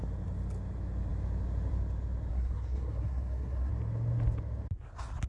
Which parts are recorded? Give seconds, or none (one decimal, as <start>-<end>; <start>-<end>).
0.0-2.3; 3.7-5.3